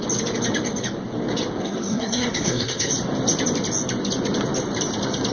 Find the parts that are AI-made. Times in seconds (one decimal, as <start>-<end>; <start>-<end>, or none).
1.6-2.9